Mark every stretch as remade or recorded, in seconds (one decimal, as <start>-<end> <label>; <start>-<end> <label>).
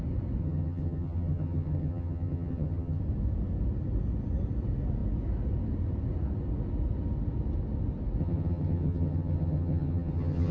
0.0-0.4 recorded; 0.4-3.0 remade; 3.0-8.2 recorded; 8.2-10.5 remade